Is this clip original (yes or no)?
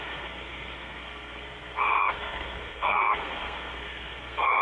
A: no